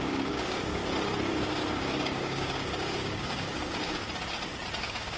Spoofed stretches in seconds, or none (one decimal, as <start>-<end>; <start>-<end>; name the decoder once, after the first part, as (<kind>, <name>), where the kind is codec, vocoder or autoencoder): 0.0-0.8 (codec, DAC); 1.7-4.0; 4.8-5.2